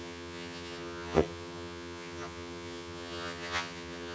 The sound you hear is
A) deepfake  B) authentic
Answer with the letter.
A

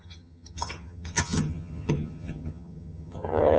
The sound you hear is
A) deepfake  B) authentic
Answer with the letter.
A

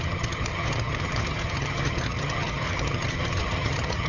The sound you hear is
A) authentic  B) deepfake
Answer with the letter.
B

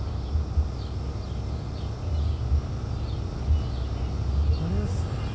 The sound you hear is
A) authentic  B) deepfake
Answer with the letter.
A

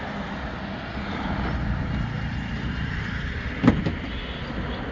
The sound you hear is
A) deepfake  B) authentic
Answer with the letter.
B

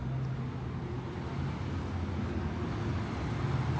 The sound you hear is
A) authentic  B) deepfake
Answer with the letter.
A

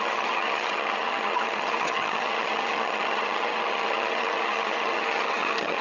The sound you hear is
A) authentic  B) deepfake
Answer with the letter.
B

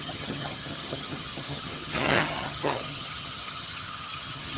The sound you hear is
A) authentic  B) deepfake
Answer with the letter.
B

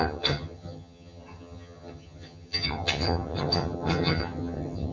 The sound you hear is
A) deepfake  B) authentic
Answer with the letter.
A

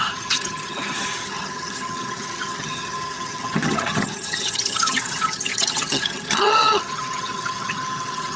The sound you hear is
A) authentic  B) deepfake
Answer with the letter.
B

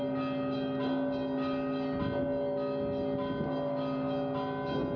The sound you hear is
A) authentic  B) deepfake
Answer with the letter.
A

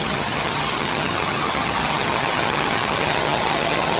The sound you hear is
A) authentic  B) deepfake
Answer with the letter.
B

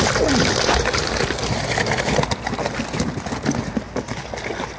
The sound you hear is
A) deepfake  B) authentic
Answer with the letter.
B